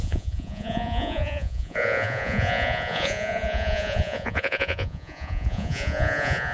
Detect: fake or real fake